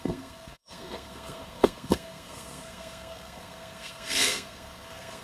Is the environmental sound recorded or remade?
remade